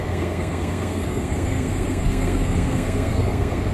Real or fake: fake